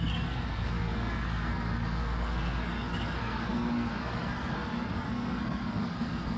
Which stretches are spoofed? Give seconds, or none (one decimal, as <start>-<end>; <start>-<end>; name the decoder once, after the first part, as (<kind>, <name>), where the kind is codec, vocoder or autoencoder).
0.0-6.4 (codec, SNAC)